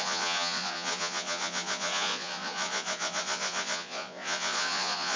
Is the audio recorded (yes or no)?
no